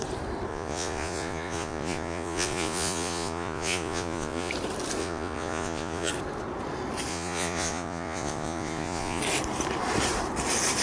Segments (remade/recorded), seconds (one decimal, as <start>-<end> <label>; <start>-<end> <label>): 0.0-0.5 recorded; 0.5-4.5 remade; 4.5-5.0 recorded; 5.0-6.1 remade; 6.1-7.1 recorded; 7.1-9.2 remade; 9.2-10.8 recorded